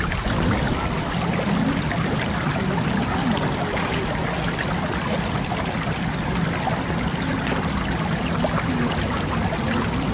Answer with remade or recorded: recorded